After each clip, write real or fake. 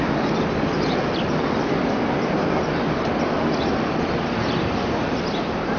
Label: real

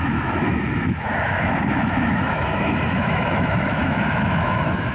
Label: fake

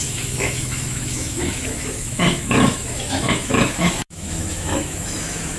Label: fake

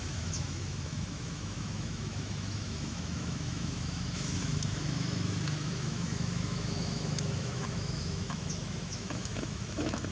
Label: fake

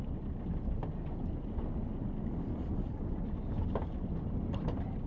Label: real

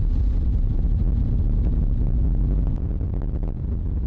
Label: real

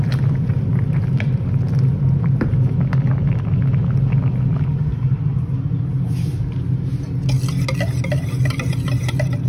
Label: real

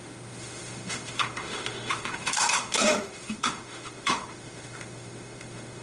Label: fake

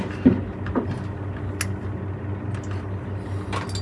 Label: real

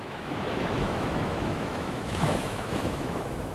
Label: fake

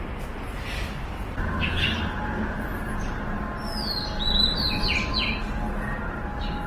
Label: real